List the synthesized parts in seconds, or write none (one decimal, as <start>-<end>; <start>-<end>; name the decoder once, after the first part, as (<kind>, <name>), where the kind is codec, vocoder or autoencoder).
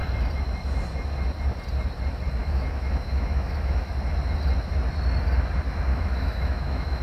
2.4-3.9 (autoencoder, DAC-VAE); 5.9-7.0